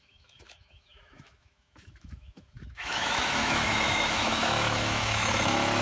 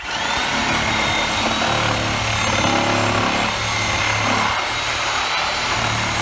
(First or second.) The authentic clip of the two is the second